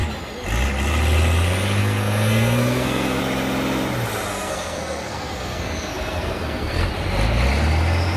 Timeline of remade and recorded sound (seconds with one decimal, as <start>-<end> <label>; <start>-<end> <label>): 0.0-1.8 recorded; 1.8-3.2 remade; 3.2-4.3 recorded; 4.3-6.9 remade; 6.9-8.2 recorded